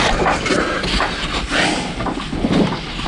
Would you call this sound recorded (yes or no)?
yes